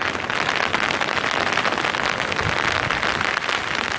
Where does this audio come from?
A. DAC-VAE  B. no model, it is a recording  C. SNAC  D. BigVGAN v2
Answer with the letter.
B